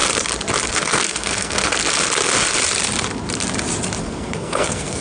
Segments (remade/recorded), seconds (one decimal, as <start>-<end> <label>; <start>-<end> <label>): 0.0-0.7 recorded; 0.7-1.6 remade; 1.6-4.0 recorded; 4.0-5.0 remade